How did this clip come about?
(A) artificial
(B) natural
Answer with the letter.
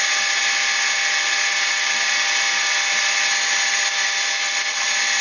B